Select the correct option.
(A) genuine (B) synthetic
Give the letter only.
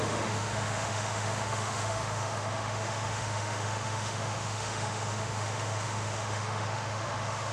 B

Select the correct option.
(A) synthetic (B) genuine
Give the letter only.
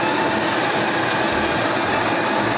B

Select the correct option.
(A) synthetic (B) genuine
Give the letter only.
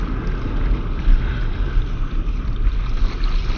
B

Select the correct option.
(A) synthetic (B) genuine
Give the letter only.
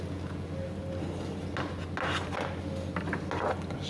B